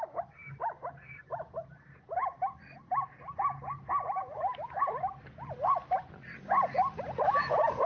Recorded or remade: recorded